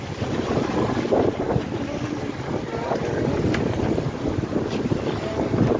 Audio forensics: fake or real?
fake